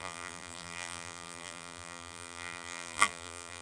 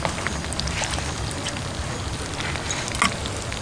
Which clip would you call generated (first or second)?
first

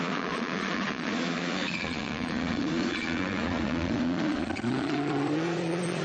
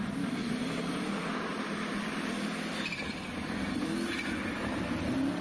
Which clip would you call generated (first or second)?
first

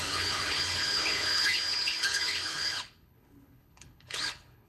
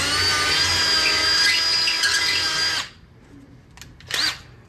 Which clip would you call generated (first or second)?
first